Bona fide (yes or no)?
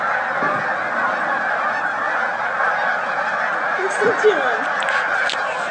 yes